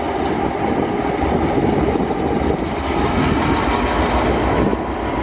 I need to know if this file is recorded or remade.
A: recorded